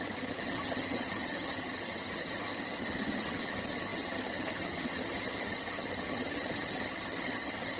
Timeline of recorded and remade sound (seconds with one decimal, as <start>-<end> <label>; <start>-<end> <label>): 0.0-7.8 remade